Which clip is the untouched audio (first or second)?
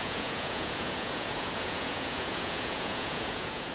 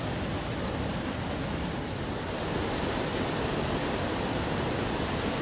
second